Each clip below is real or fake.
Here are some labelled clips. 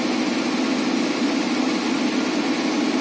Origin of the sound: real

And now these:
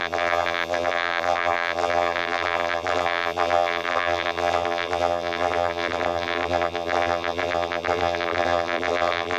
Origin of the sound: fake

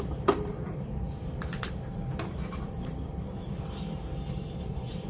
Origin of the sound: fake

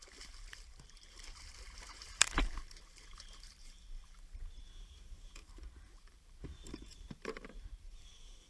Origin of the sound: fake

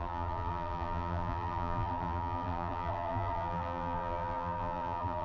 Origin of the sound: fake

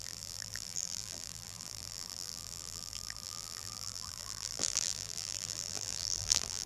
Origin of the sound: fake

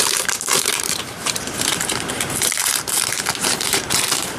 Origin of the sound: fake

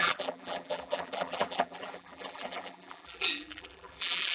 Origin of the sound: fake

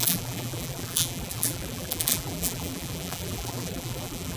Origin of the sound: fake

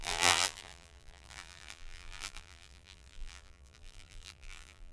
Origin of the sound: fake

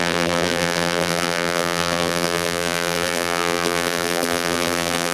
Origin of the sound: fake